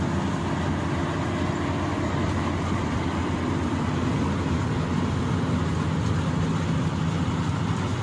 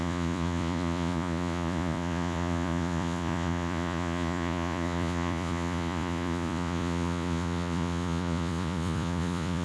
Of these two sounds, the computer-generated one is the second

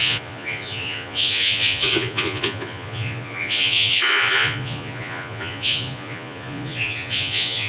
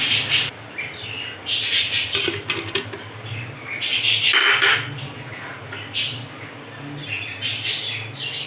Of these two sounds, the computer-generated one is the first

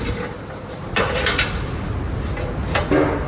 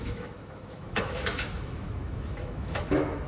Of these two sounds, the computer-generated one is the second